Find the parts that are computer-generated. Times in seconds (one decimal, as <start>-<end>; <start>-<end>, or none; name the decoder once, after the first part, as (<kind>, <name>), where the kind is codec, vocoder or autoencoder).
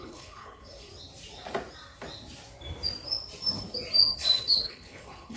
0.0-0.9 (codec, HILCodec); 4.1-5.4